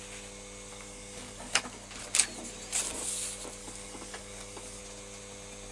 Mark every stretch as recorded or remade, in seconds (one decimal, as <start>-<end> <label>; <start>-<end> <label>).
0.0-0.7 recorded; 0.7-1.6 remade; 1.6-3.6 recorded; 3.6-4.8 remade; 4.8-5.7 recorded